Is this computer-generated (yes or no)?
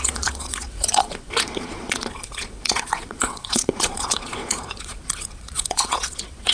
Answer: yes